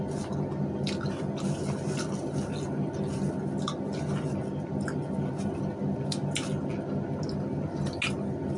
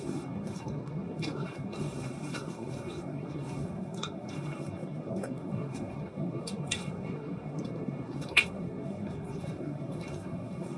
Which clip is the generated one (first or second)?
second